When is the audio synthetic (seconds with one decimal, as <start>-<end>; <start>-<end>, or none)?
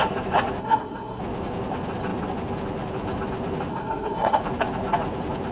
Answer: 0.6-1.2; 3.7-4.4